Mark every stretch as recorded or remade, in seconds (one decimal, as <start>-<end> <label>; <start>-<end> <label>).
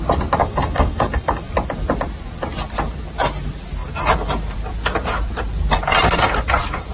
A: 0.0-0.4 recorded; 0.4-1.5 remade; 1.5-6.9 recorded